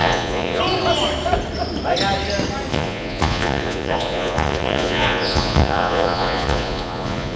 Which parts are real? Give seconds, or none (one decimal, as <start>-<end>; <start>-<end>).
0.6-2.7